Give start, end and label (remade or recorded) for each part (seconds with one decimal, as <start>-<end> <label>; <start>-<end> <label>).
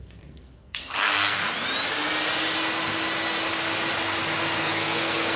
0.0-1.4 remade; 1.4-4.6 recorded; 4.6-5.4 remade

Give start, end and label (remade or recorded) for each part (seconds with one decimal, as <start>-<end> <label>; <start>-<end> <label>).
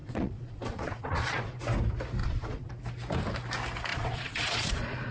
0.0-1.6 remade; 1.6-2.2 recorded; 2.2-2.7 remade; 2.7-3.9 recorded; 3.9-5.1 remade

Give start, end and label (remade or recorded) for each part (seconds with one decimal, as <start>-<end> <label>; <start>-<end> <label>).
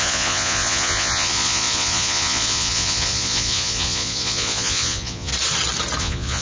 0.0-5.3 remade; 5.3-6.0 recorded; 6.0-6.4 remade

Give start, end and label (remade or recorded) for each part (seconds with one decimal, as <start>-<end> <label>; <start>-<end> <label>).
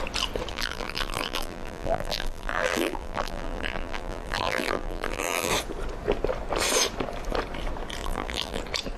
0.0-0.5 recorded; 0.5-5.5 remade; 5.5-8.0 recorded; 8.0-8.6 remade; 8.6-9.0 recorded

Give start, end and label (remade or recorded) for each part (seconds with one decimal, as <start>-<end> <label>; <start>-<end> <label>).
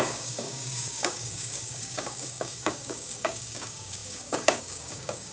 0.0-5.3 remade